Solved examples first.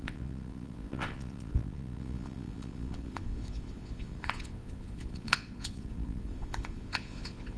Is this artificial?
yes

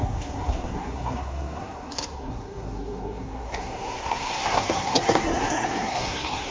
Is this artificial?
yes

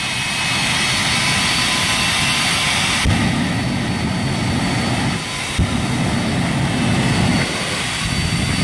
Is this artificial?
no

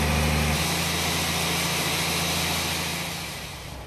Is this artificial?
no